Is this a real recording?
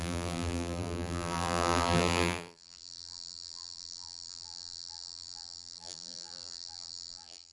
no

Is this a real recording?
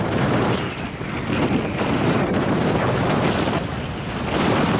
yes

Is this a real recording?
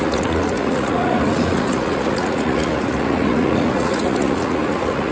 no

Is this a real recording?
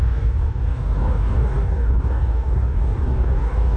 no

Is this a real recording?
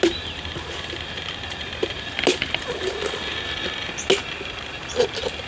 yes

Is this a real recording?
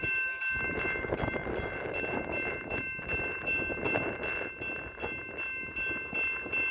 yes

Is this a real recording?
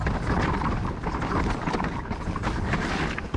yes